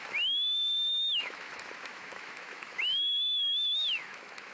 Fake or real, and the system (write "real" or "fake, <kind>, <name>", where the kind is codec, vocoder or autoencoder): fake, autoencoder, DAC-VAE